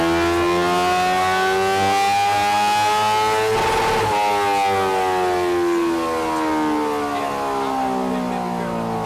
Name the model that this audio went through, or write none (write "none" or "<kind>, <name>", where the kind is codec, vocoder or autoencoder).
none